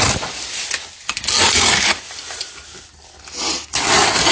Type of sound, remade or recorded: recorded